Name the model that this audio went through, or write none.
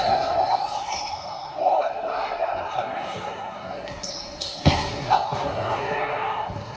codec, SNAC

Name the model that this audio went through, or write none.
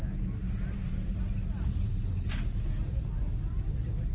none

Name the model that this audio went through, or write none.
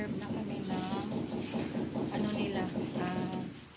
none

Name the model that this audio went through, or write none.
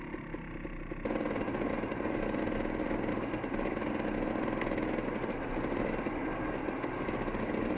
none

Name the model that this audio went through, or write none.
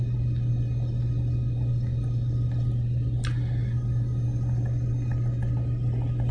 none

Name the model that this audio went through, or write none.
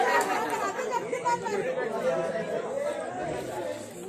none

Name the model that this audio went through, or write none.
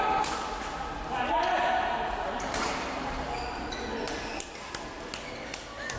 none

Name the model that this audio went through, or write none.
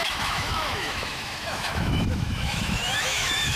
autoencoder, DAC-VAE